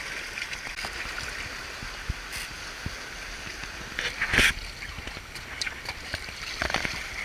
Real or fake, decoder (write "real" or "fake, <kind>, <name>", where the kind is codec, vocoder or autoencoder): real